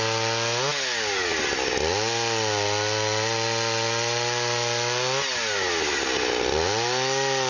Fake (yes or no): no